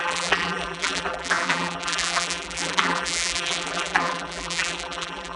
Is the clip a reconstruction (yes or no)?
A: yes